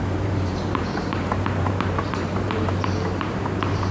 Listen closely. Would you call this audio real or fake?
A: fake